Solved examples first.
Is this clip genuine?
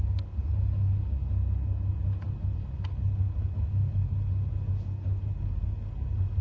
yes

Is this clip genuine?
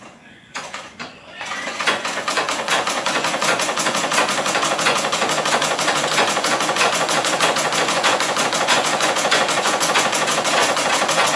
no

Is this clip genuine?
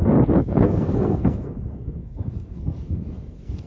no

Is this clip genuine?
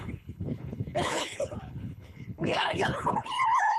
no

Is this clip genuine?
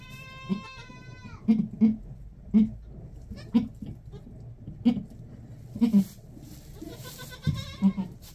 yes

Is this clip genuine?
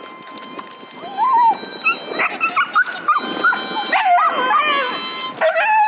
yes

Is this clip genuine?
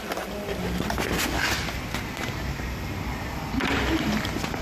no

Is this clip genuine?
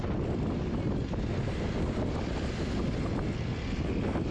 yes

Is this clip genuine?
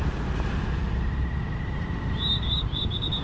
yes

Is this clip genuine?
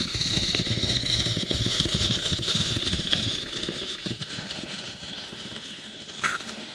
no